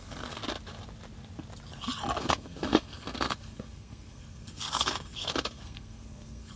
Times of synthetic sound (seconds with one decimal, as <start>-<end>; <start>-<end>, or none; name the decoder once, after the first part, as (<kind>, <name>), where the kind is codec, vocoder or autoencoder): 0.0-0.4 (codec, SNAC); 2.2-6.6